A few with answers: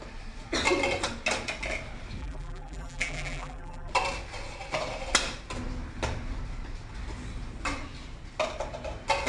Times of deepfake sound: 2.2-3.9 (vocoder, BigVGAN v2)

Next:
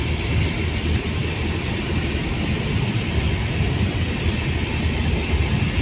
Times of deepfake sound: 1.2-2.2 (vocoder, BigVGAN v2)

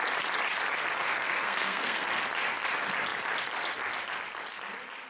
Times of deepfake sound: 1.1-2.1 (codec, SNAC)

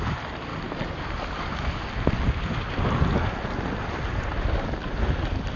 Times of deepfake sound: none